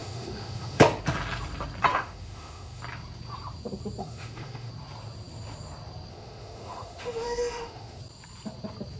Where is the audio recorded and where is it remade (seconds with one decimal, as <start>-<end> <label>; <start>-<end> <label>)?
0.0-0.8 remade; 0.8-1.9 recorded; 1.9-2.8 remade; 2.8-4.0 recorded; 4.0-4.7 remade; 4.7-6.1 recorded; 6.1-8.0 remade; 8.0-9.0 recorded